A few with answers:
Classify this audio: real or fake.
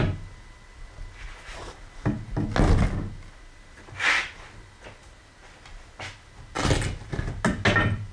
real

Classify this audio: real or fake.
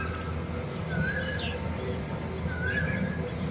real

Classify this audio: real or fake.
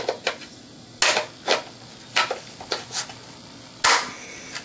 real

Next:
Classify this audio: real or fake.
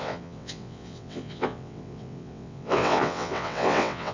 fake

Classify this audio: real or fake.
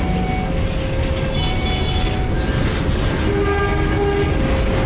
real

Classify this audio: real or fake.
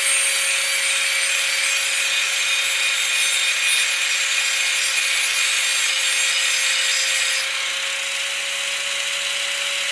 real